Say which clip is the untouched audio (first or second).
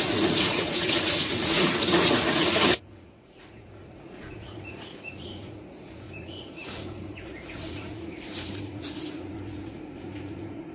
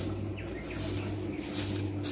second